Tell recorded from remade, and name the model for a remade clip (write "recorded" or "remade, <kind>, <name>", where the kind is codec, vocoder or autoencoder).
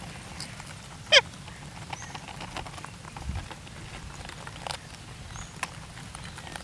recorded